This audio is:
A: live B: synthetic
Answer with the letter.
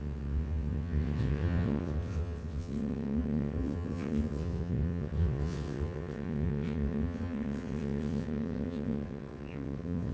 B